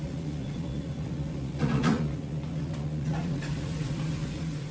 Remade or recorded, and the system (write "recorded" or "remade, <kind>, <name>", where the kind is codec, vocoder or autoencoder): remade, vocoder, Vocos